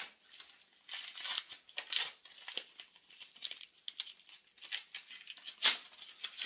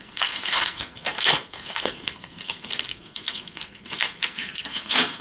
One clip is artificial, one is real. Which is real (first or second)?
first